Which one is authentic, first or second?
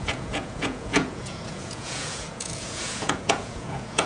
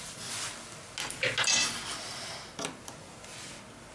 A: second